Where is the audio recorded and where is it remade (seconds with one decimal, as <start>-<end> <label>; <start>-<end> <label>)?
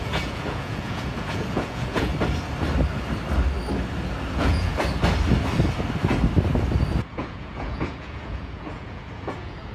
0.0-2.1 remade; 2.1-4.3 recorded; 4.3-4.7 remade; 4.7-7.0 recorded; 7.0-9.7 remade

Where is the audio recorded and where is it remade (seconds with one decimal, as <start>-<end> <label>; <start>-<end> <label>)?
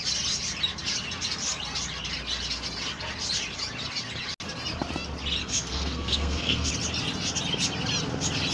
0.0-5.4 recorded; 5.4-6.7 remade; 6.7-8.5 recorded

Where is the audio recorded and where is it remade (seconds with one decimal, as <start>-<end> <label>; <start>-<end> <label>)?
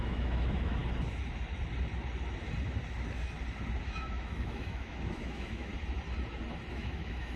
0.0-0.8 remade; 0.8-3.8 recorded; 3.8-5.7 remade; 5.7-6.7 recorded; 6.7-7.4 remade